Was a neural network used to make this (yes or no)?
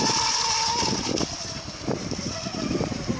no